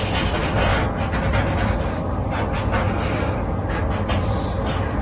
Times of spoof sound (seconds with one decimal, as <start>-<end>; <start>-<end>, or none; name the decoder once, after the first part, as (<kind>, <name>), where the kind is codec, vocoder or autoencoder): 0.7-3.7 (vocoder, BigVGAN v2)

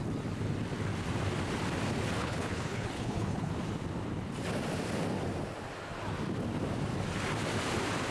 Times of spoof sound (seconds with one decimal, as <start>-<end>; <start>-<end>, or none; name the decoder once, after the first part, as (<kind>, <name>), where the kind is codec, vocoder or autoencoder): 2.2-3.5 (codec, HILCodec)

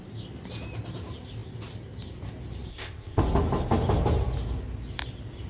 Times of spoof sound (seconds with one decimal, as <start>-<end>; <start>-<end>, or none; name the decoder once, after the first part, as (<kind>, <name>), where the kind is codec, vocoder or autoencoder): 2.7-3.2 (codec, ZipCodec)